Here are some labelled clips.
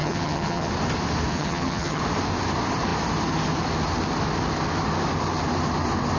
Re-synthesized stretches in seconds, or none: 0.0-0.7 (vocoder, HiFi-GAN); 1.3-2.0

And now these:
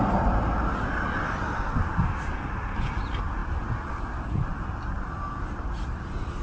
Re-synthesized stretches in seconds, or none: none

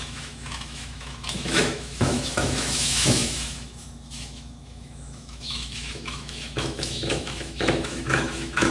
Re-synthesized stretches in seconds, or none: 0.0-8.7 (autoencoder, DAC-VAE)

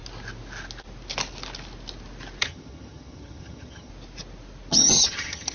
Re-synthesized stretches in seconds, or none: 2.4-3.9 (vocoder, HiFi-GAN); 4.7-5.5

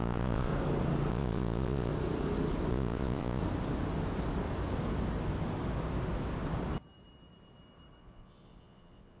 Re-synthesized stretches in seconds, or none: 0.0-0.5 (vocoder, Vocos); 1.1-1.9; 2.7-3.4; 8.0-9.2